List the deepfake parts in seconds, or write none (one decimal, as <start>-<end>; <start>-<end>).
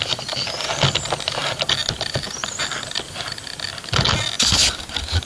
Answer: none